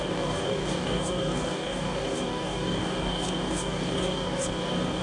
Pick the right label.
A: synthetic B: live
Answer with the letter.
A